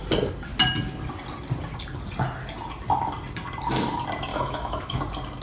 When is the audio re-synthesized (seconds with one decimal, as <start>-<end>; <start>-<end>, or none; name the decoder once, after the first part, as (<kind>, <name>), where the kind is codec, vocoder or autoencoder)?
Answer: 4.3-5.0 (autoencoder, DAC-VAE)